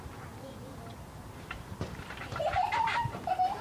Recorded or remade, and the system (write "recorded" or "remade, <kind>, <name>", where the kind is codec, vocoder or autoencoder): remade, vocoder, BigVGAN v2